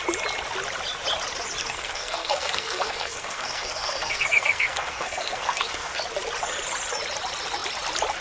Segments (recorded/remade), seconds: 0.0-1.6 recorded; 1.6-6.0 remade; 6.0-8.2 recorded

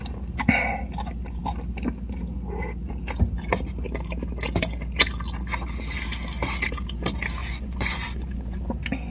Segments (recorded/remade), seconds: 0.0-7.4 recorded; 7.4-8.6 remade; 8.6-9.1 recorded

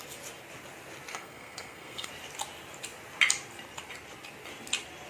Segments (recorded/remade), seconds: 0.0-1.1 recorded; 1.1-2.1 remade; 2.1-5.1 recorded

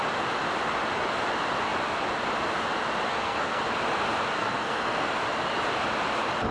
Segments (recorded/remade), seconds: 0.0-3.1 recorded; 3.1-3.6 remade; 3.6-4.4 recorded; 4.4-5.1 remade; 5.1-6.5 recorded

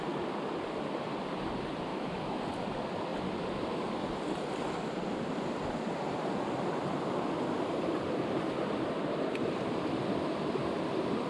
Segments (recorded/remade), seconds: 0.0-1.9 recorded; 1.9-2.4 remade; 2.4-11.3 recorded

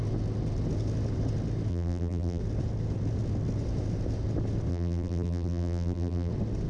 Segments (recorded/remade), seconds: 0.0-1.7 recorded; 1.7-2.4 remade; 2.4-4.7 recorded; 4.7-6.3 remade; 6.3-6.7 recorded

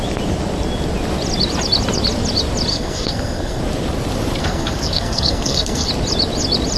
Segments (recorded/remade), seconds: 0.0-2.7 recorded; 2.7-3.6 remade; 3.6-4.4 recorded; 4.4-5.9 remade; 5.9-6.8 recorded

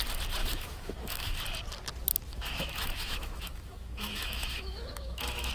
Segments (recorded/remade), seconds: 0.0-0.4 recorded; 0.4-1.4 remade; 1.4-2.3 recorded; 2.3-5.5 remade